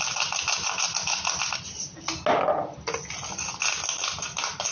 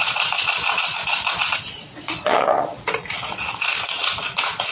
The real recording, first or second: first